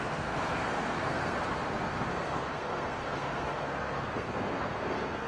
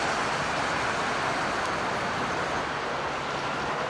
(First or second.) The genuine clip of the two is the second